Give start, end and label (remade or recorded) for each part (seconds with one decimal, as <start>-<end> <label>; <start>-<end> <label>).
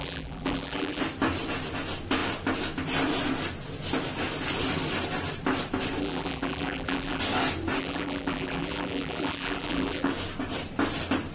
0.0-1.0 remade; 1.0-6.0 recorded; 6.0-7.2 remade; 7.2-7.8 recorded; 7.8-10.1 remade; 10.1-11.3 recorded